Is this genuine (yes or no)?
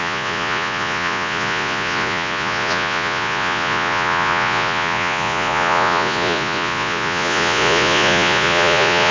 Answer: no